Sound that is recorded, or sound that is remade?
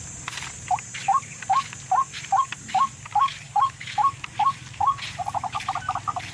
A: recorded